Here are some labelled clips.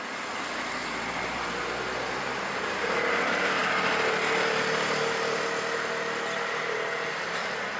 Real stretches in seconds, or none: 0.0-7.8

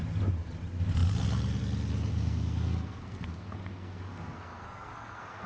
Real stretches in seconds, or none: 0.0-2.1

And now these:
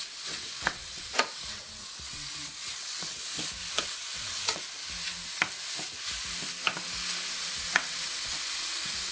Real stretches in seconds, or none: 3.3-3.8; 4.8-7.3